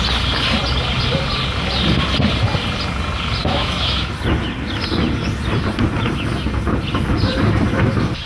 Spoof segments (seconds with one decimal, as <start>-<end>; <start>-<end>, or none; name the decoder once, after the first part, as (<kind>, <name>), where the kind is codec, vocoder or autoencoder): 3.4-4.1 (autoencoder, DAC-VAE)